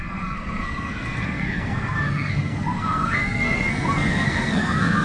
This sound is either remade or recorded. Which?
remade